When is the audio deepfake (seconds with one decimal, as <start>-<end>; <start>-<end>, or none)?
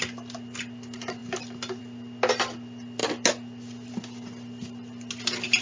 none